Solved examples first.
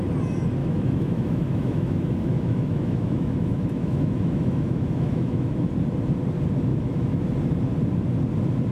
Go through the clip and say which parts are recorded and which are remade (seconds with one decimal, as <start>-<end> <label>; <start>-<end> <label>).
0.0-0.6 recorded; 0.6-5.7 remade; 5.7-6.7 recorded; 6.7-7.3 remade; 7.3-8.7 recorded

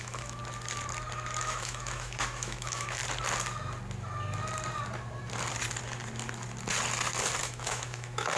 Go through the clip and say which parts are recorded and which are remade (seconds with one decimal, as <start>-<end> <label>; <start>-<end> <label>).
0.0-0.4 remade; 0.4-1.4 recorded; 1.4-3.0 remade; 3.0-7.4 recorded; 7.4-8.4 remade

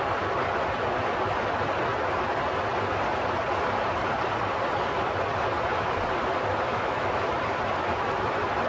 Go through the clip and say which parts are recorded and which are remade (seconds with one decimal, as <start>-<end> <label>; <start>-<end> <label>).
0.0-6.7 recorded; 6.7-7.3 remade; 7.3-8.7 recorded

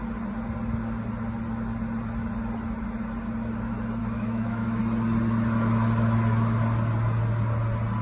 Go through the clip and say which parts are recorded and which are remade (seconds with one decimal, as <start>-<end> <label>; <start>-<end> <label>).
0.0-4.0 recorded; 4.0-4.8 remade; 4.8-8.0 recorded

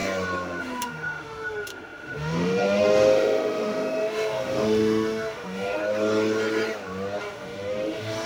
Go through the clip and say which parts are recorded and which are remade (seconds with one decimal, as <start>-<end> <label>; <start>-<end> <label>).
0.0-0.6 recorded; 0.6-5.8 remade; 5.8-7.2 recorded; 7.2-8.3 remade

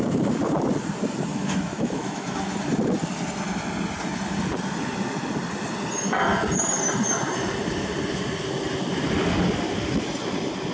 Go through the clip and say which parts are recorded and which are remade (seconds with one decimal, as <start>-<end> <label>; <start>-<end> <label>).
0.0-1.3 recorded; 1.3-2.4 remade; 2.4-10.7 recorded

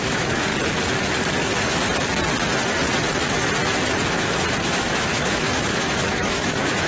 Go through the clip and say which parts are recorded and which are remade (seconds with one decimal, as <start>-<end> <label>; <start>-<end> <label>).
0.0-0.5 remade; 0.5-4.6 recorded; 4.6-6.9 remade

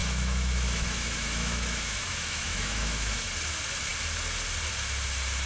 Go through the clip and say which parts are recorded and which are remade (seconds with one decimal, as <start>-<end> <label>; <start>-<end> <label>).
0.0-3.3 remade; 3.3-5.5 recorded